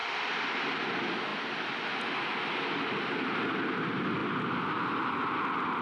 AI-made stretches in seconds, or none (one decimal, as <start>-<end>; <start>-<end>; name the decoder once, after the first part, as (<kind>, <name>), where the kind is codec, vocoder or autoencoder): 0.0-0.5 (vocoder, BigVGAN v2)